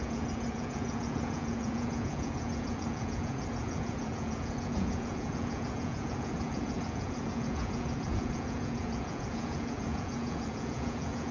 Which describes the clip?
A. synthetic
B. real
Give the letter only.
A